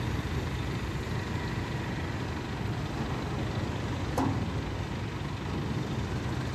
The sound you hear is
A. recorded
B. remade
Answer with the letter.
A